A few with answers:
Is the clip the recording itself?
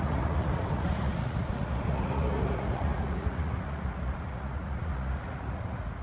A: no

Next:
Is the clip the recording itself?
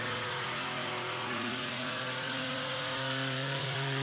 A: no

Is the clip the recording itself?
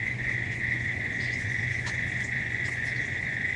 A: no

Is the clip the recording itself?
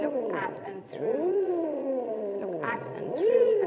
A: no